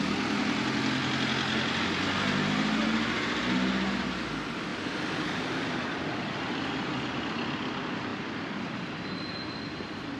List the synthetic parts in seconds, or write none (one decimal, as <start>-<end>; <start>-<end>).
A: none